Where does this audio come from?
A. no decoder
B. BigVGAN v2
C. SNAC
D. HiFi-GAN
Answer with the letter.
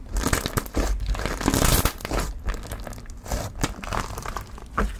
A